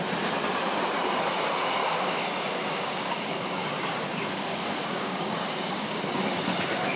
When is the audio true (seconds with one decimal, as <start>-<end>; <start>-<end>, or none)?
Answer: 0.0-1.8; 6.0-7.0